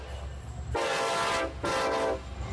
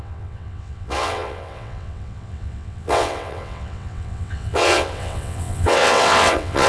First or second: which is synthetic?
second